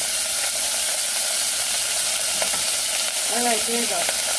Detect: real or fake real